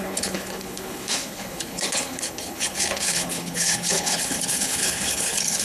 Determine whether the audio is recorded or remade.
remade